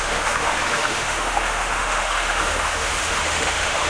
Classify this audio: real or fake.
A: fake